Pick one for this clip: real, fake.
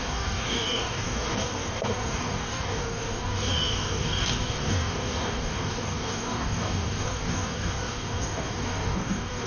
fake